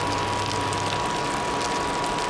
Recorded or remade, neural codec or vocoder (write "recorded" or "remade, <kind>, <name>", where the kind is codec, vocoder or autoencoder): recorded